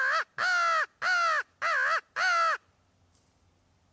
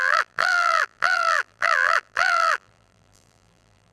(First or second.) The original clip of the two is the first